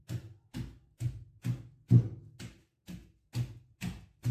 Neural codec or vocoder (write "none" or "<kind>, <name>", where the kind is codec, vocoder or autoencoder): none